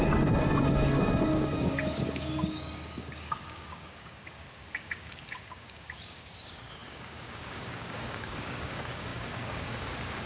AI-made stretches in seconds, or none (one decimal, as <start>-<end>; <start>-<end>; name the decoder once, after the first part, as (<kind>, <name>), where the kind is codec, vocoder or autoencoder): 0.0-10.3 (codec, DAC)